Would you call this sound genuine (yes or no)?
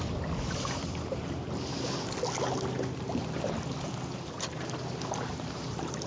yes